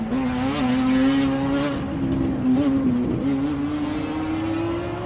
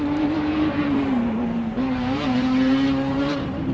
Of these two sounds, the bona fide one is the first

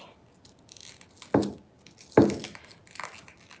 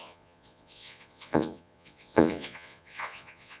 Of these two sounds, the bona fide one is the first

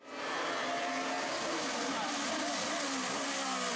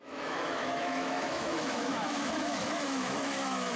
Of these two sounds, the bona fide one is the first